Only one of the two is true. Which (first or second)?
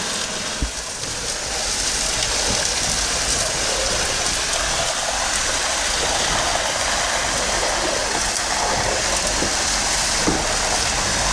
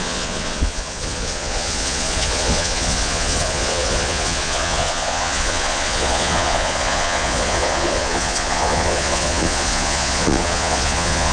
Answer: first